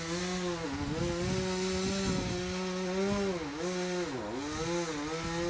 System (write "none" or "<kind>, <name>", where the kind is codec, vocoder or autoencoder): none